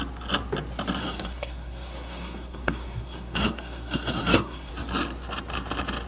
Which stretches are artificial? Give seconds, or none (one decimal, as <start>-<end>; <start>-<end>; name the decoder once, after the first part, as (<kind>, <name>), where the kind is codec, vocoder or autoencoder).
1.0-4.7 (codec, SNAC)